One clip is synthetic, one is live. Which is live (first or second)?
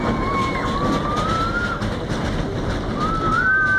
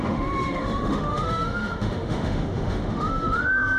first